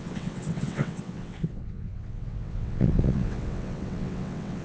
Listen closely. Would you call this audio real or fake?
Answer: fake